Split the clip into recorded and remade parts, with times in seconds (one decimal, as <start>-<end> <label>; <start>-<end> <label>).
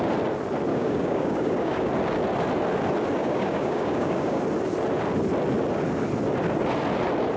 0.0-0.7 recorded; 0.7-1.9 remade; 1.9-3.2 recorded; 3.2-4.4 remade; 4.4-7.4 recorded